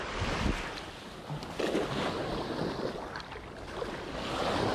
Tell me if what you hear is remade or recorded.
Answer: recorded